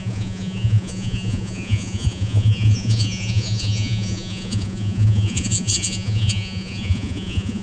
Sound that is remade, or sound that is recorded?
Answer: remade